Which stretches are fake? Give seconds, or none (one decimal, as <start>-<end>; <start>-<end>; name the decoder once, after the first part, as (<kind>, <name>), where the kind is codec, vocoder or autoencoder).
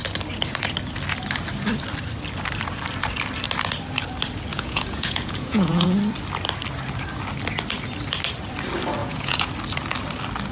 4.5-6.0 (vocoder, Vocos); 9.0-9.5